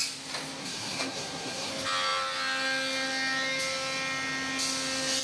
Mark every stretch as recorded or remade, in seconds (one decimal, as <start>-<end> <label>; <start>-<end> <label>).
0.0-0.6 recorded; 0.6-1.7 remade; 1.7-5.2 recorded